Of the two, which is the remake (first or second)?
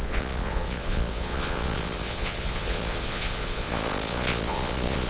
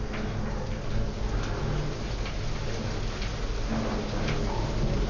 first